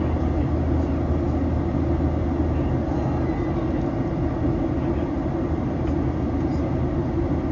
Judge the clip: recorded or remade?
recorded